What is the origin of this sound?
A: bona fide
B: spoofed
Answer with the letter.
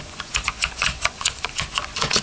B